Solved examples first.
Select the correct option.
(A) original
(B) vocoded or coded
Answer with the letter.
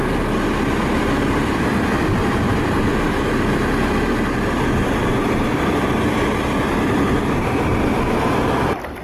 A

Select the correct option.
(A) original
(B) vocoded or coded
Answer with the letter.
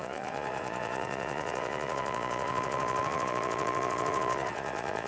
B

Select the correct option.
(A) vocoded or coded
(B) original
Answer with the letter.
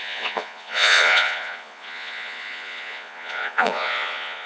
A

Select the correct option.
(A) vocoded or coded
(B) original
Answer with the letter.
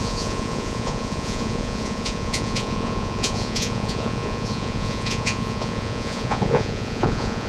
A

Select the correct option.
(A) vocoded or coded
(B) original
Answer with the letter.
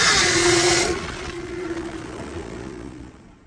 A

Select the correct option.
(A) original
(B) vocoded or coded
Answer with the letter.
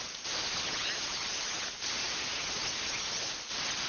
A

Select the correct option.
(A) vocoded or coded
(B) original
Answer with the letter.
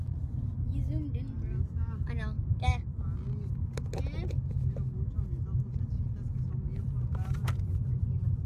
B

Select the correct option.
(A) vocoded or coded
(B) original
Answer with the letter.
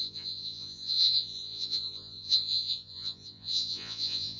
A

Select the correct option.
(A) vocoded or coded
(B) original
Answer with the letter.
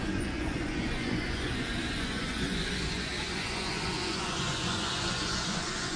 A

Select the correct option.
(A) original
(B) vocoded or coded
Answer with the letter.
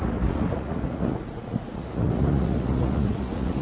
B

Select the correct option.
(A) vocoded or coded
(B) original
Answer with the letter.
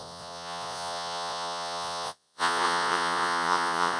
A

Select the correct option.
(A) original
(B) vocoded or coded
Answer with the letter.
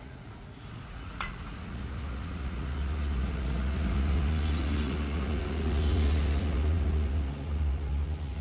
B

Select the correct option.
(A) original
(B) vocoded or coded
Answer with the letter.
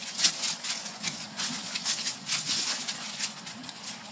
B